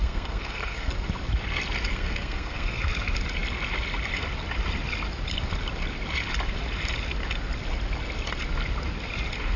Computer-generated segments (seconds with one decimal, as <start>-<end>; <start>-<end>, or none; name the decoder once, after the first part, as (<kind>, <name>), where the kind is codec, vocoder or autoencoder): 0.0-0.9 (codec, SNAC); 1.9-2.8